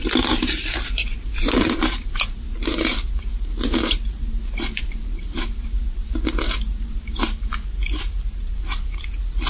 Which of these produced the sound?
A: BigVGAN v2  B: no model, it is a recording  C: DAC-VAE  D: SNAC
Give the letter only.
A